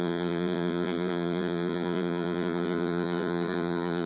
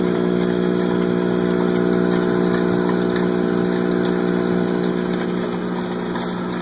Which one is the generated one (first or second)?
first